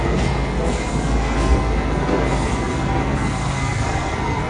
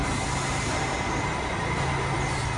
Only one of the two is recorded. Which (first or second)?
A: second